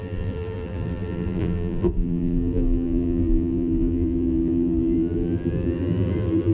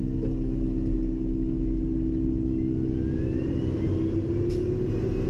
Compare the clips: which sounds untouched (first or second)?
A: second